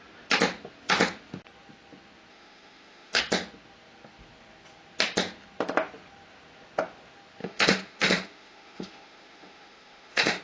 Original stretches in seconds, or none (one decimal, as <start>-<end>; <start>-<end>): 0.0-2.3; 3.2-7.4